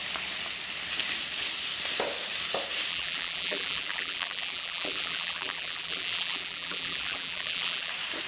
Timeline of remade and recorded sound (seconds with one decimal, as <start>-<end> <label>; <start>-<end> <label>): 0.0-2.9 recorded; 2.9-7.9 remade; 7.9-8.3 recorded